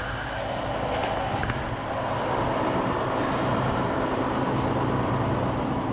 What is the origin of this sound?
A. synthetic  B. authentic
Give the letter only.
B